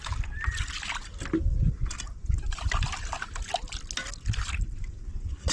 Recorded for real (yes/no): yes